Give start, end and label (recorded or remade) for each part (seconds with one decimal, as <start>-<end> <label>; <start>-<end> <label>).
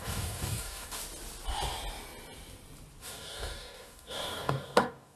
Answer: 0.0-1.0 remade; 1.0-3.0 recorded; 3.0-5.2 remade